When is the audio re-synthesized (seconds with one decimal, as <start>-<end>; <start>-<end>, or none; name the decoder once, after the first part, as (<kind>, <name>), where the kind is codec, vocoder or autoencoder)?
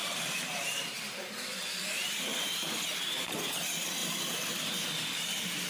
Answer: 0.0-1.9 (vocoder, BigVGAN v2); 2.3-3.4; 4.0-5.7